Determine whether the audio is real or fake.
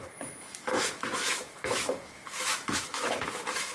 fake